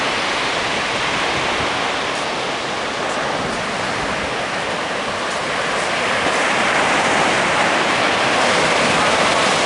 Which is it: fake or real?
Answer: real